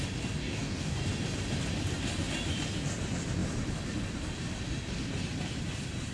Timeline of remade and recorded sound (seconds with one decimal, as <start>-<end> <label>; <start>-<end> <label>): 0.0-0.4 recorded; 0.4-1.0 remade; 1.0-6.1 recorded